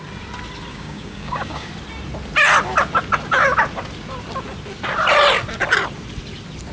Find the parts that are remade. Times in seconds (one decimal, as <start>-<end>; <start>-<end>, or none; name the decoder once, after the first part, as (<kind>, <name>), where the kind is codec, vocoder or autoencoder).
0.7-1.7 (codec, DAC)